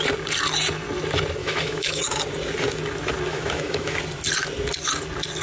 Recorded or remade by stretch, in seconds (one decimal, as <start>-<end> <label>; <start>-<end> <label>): 0.0-1.4 recorded; 1.4-2.0 remade; 2.0-3.3 recorded; 3.3-4.0 remade; 4.0-5.4 recorded